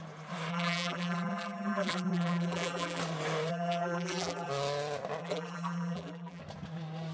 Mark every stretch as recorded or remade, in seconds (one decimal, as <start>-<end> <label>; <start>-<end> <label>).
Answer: 0.0-0.5 recorded; 0.5-3.0 remade; 3.0-3.5 recorded; 3.5-4.5 remade; 4.5-5.2 recorded; 5.2-6.4 remade; 6.4-7.1 recorded